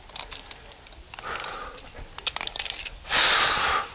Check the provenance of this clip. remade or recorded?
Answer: recorded